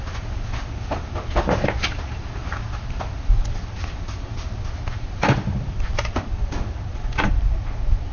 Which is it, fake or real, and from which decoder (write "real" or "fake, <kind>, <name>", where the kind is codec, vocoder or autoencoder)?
real